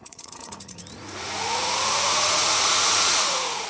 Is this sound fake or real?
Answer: fake